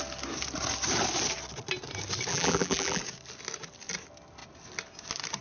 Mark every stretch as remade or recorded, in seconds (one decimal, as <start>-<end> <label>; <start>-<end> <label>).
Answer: 0.0-2.3 recorded; 2.3-3.0 remade; 3.0-5.4 recorded

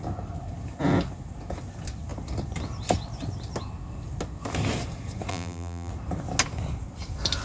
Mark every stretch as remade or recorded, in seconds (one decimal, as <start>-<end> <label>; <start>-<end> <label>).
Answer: 0.0-5.3 recorded; 5.3-5.9 remade; 5.9-7.4 recorded

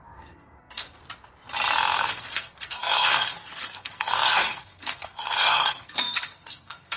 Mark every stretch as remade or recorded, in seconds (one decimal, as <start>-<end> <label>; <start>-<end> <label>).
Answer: 0.0-1.0 remade; 1.0-2.0 recorded; 2.0-7.0 remade

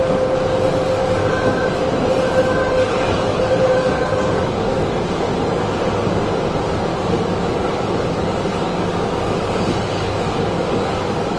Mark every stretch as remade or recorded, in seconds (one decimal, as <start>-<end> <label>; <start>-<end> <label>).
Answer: 0.0-1.0 recorded; 1.0-1.6 remade; 1.6-2.6 recorded; 2.6-5.0 remade; 5.0-6.9 recorded; 6.9-11.4 remade

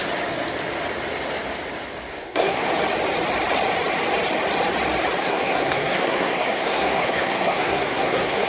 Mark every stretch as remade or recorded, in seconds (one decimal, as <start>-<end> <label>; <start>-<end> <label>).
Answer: 0.0-2.1 recorded; 2.1-2.7 remade; 2.7-5.2 recorded; 5.2-8.5 remade

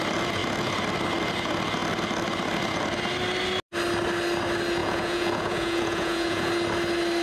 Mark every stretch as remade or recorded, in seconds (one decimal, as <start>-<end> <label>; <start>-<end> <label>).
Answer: 0.0-4.8 recorded; 4.8-6.5 remade; 6.5-7.2 recorded

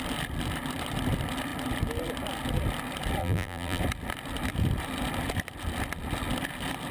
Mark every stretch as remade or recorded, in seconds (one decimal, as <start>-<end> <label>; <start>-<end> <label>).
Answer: 0.0-3.2 recorded; 3.2-3.8 remade; 3.8-6.9 recorded

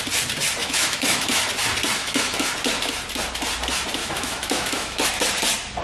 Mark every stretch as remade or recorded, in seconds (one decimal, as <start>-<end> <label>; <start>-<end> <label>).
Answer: 0.0-0.6 recorded; 0.6-1.5 remade; 1.5-2.0 recorded; 2.0-2.5 remade; 2.5-4.0 recorded; 4.0-5.1 remade; 5.1-5.8 recorded